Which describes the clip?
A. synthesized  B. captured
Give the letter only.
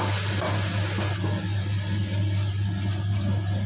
B